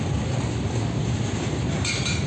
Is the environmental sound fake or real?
real